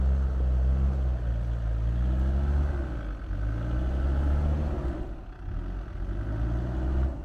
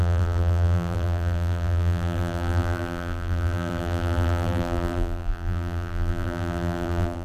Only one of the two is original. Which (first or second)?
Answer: first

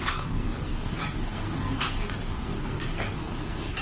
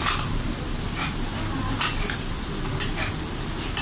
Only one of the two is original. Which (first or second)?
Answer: second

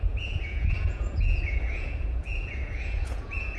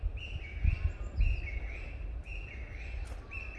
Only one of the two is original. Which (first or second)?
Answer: second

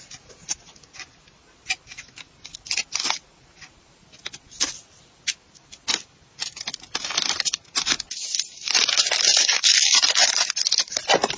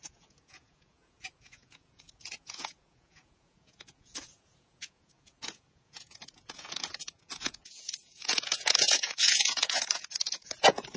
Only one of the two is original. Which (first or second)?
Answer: first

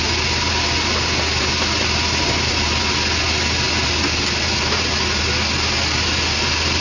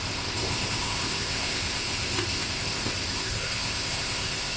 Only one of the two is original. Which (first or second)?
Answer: first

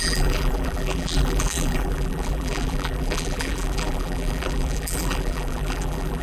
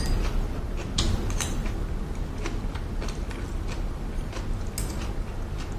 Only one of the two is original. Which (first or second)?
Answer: second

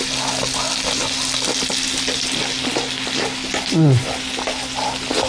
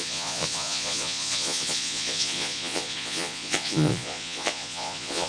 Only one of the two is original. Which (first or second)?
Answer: first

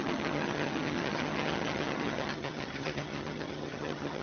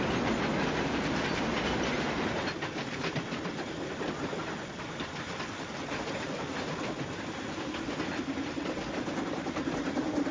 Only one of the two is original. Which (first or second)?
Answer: second